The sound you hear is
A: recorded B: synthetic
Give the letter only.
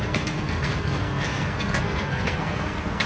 B